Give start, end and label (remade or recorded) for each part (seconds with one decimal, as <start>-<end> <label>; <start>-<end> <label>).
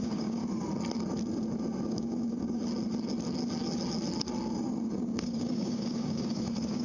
0.0-0.4 remade; 0.4-1.9 recorded; 1.9-2.6 remade; 2.6-4.8 recorded; 4.8-6.8 remade